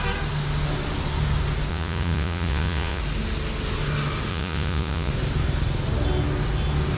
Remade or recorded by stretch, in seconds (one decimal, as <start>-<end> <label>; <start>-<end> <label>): 0.0-1.7 recorded; 1.7-3.0 remade; 3.0-4.3 recorded; 4.3-5.1 remade; 5.1-7.0 recorded